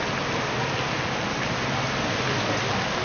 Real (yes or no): yes